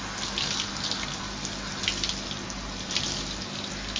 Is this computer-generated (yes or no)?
no